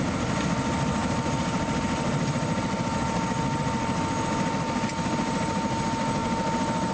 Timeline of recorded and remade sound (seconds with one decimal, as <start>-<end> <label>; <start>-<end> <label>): 0.0-6.9 recorded